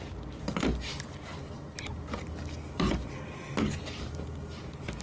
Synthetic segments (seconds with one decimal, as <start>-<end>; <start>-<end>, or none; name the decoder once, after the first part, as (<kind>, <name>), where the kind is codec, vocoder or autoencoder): none